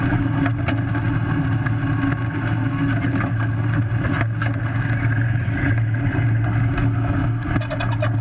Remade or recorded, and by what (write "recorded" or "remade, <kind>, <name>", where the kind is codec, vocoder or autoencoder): recorded